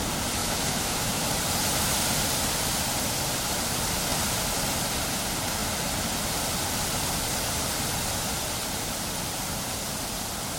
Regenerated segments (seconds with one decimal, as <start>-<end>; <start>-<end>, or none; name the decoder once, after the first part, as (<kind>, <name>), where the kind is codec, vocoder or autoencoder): 0.4-1.3 (autoencoder, DAC-VAE)